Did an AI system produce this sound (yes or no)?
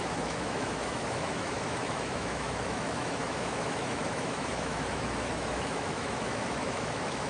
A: yes